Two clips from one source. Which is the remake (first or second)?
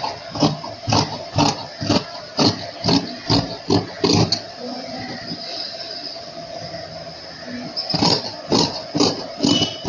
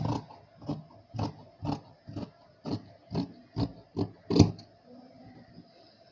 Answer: first